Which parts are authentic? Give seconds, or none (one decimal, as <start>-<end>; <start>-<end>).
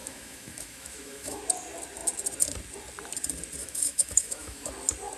1.4-3.6; 4.7-5.2